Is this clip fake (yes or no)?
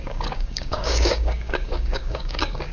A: yes